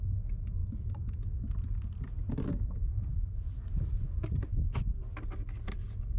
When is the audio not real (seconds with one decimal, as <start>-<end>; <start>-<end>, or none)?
none